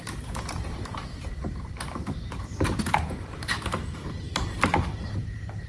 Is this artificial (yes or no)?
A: yes